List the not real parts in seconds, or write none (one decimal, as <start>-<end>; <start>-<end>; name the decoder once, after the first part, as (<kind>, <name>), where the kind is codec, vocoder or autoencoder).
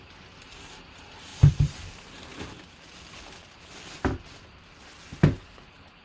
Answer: 1.3-3.2 (vocoder, BigVGAN v2)